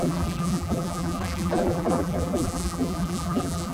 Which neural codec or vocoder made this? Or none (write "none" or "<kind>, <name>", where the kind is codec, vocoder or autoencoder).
vocoder, BigVGAN v2